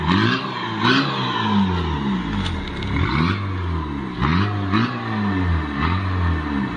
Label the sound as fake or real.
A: real